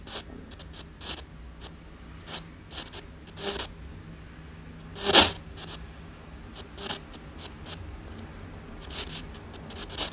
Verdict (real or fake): real